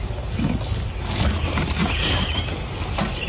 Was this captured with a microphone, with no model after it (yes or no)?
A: yes